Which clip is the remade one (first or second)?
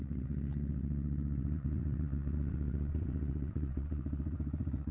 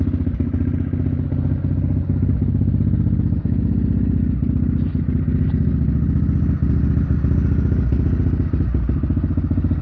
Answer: first